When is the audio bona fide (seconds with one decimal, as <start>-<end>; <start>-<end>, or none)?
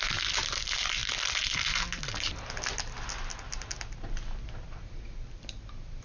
0.0-6.0